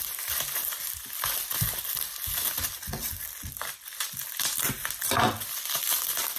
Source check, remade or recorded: recorded